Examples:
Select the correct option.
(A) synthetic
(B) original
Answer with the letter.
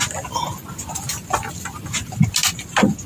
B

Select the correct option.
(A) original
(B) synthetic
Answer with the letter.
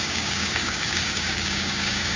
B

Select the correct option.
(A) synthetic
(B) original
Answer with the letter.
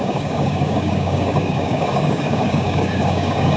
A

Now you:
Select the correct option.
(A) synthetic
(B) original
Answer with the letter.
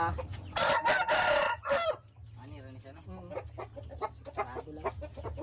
B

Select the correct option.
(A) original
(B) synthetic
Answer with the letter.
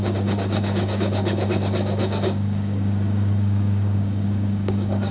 B